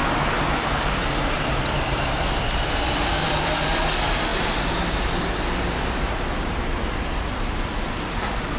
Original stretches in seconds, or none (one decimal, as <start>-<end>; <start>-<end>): 4.3-6.2